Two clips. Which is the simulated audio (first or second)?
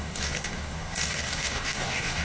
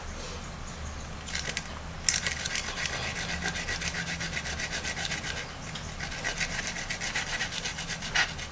first